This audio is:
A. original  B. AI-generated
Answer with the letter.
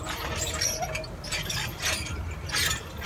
A